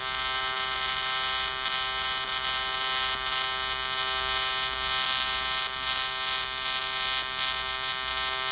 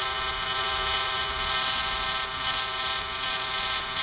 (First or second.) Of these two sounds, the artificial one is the second